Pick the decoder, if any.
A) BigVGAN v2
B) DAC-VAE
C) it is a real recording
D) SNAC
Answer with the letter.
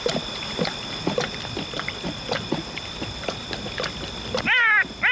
C